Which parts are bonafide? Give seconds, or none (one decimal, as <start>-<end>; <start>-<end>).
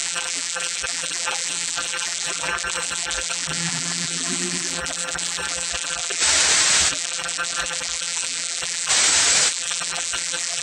6.2-6.9; 8.9-9.5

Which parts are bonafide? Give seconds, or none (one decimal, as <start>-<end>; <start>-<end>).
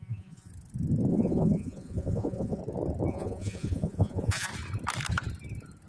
0.5-1.1; 2.6-3.1; 4.5-5.9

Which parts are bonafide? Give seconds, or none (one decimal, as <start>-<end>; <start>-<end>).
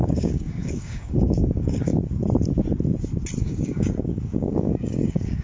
1.9-3.4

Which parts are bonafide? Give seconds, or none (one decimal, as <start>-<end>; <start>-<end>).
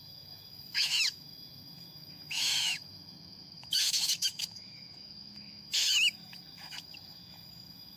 none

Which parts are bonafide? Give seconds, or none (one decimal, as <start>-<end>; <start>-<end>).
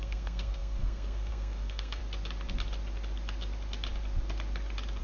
2.0-5.0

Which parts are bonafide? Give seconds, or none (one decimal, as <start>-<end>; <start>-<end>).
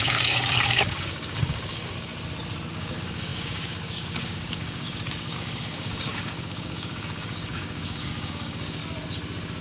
2.1-2.7; 8.8-9.6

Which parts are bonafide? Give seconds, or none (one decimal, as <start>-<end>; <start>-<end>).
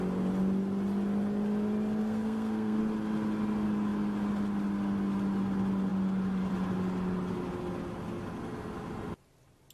0.0-2.0; 2.8-9.7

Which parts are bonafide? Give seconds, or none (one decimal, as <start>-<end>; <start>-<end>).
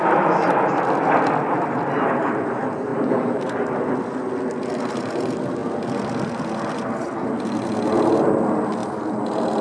0.0-2.9; 3.6-9.6